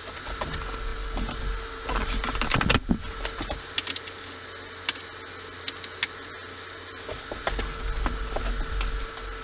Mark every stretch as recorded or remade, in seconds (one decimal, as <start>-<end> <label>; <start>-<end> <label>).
0.0-9.4 recorded